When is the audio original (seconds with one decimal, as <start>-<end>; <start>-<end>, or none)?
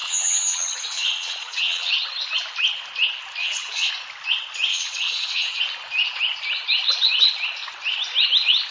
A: 1.9-3.4; 3.9-4.7; 5.6-8.7